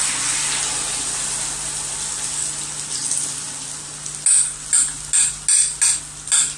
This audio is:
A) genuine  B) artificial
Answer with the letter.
A